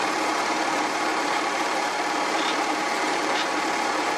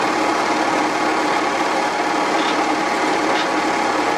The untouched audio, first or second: second